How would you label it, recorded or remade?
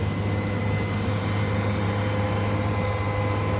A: recorded